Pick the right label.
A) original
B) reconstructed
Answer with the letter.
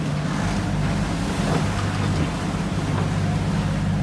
A